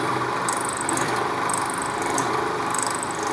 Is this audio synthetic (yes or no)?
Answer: yes